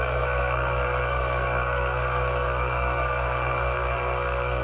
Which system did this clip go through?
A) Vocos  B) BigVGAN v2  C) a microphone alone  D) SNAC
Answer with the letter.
D